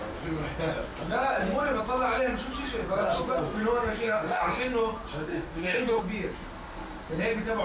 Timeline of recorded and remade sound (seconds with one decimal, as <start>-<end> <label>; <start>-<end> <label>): 0.0-4.0 recorded; 4.0-4.6 remade; 4.6-5.3 recorded; 5.3-6.0 remade; 6.0-7.6 recorded